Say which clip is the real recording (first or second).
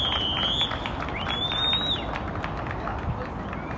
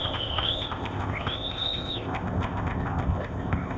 first